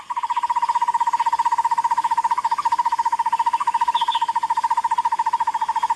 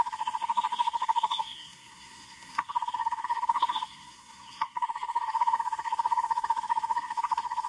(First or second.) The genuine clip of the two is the first